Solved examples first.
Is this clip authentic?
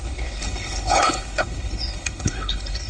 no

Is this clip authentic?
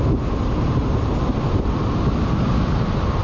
yes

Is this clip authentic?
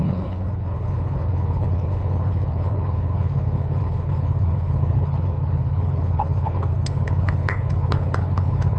no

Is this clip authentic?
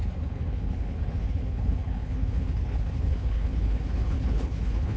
no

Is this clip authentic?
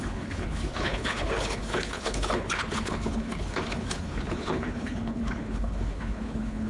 no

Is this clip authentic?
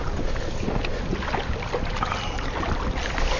yes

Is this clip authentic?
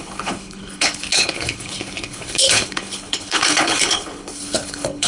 no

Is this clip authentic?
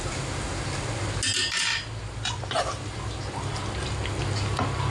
yes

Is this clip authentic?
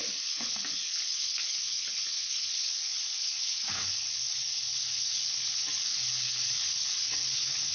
no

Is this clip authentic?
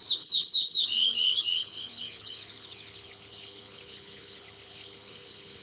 no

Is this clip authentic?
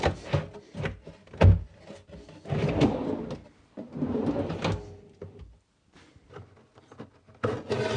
yes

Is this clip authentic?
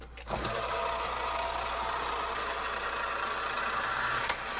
yes